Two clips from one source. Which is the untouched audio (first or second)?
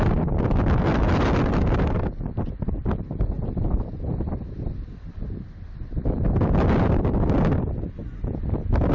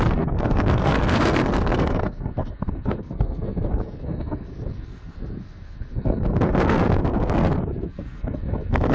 first